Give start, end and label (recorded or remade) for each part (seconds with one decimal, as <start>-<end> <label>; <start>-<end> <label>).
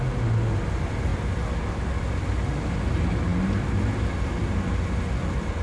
0.0-5.6 recorded